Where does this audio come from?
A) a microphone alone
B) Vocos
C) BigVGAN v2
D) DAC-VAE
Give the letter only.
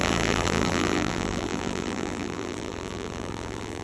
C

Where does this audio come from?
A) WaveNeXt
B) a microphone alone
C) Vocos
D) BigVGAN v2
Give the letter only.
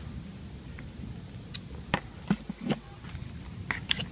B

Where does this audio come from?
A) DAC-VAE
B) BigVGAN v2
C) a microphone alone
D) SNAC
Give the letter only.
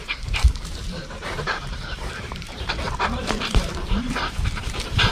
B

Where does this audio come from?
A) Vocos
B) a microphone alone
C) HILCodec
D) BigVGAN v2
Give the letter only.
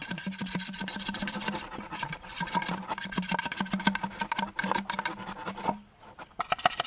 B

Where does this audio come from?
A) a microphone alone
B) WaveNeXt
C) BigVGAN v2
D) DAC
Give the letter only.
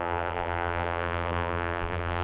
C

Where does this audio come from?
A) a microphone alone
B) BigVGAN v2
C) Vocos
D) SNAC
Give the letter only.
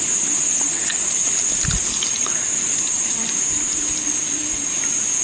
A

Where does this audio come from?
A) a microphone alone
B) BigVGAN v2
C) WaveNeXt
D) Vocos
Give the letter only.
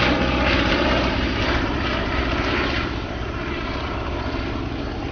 B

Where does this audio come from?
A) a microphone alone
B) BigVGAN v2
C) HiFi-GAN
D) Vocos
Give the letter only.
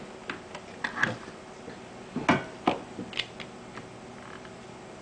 A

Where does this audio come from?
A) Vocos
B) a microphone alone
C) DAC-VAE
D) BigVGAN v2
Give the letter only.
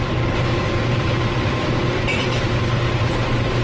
D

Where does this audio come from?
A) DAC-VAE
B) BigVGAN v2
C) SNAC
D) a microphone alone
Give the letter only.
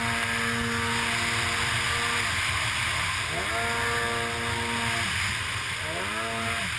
D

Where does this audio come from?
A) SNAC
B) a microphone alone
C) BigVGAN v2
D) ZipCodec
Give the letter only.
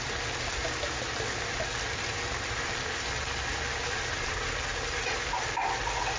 B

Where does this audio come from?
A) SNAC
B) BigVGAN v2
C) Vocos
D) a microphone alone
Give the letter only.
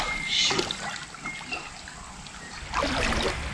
D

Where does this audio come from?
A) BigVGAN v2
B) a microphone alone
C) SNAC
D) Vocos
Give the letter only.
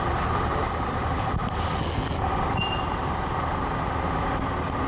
B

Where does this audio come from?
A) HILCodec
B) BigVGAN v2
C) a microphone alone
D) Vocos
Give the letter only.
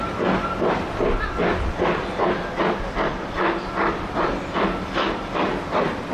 C